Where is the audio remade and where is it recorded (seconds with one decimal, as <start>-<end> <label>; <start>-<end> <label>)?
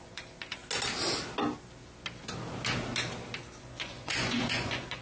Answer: 0.0-0.6 remade; 0.6-3.6 recorded; 3.6-5.0 remade